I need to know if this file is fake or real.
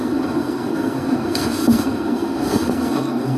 fake